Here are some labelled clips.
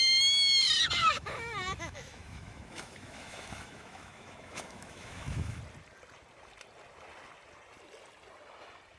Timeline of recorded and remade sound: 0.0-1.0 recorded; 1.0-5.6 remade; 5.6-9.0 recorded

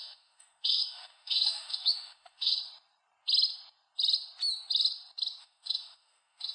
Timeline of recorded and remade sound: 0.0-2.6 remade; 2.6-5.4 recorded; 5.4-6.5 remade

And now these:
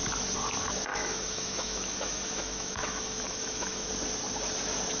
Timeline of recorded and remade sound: 0.0-0.9 recorded; 0.9-3.9 remade; 3.9-5.0 recorded

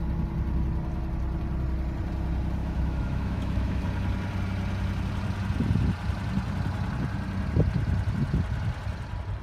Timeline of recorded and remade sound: 0.0-2.6 recorded; 2.6-3.8 remade; 3.8-9.4 recorded

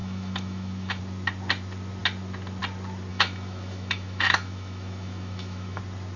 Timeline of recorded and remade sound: 0.0-1.0 remade; 1.0-3.1 recorded; 3.1-5.8 remade; 5.8-6.2 recorded